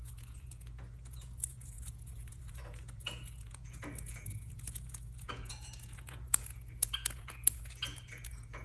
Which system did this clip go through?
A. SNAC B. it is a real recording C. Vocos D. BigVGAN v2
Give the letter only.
C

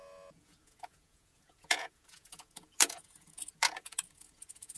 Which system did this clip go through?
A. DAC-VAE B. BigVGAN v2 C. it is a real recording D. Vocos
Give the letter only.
D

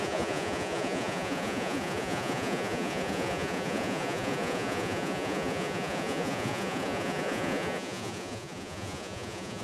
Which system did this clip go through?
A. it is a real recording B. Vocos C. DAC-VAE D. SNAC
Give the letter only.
B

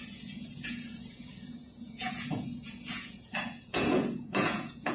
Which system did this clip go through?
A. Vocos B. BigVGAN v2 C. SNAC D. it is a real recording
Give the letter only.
A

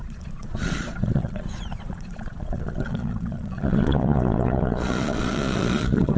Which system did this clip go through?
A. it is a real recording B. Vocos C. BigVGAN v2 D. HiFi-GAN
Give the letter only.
B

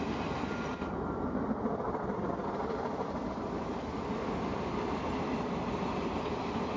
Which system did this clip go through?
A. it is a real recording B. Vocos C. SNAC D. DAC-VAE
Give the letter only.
A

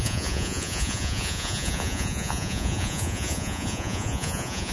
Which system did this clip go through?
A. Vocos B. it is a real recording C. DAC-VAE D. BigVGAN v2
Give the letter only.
A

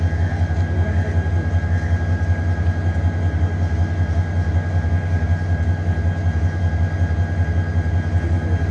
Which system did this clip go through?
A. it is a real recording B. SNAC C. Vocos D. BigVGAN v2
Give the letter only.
A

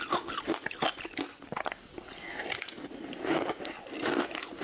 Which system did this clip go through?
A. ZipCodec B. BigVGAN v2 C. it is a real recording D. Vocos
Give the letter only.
C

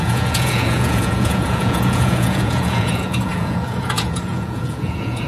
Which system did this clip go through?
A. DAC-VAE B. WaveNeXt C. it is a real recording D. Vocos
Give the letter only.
D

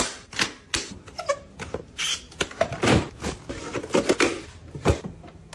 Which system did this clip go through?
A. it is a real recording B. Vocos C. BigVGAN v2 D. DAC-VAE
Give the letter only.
A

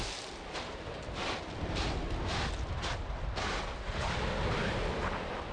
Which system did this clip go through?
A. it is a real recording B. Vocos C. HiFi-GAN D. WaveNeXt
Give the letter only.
A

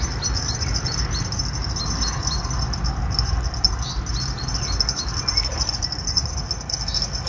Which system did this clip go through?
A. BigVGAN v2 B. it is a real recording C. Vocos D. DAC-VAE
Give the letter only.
B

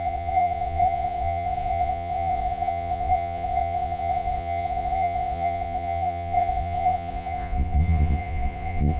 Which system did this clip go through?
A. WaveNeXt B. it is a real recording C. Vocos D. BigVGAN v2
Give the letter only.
C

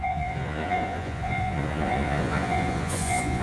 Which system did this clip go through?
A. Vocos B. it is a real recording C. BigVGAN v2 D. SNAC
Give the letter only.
A